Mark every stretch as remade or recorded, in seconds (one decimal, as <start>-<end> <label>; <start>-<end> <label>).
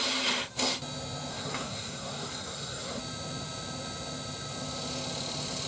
0.0-1.3 recorded; 1.3-3.0 remade; 3.0-5.7 recorded